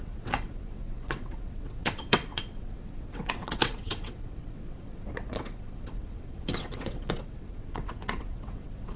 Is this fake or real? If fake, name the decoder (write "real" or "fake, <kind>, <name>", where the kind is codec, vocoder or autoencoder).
fake, vocoder, WaveNeXt